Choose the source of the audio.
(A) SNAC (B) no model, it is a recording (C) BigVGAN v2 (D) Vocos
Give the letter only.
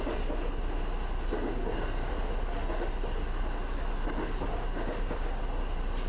B